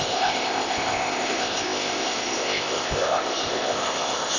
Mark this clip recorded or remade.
remade